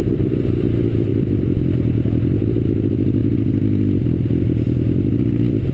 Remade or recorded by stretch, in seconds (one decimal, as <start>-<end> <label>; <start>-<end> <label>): 0.0-5.7 recorded